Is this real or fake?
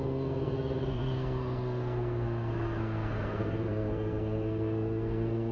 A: fake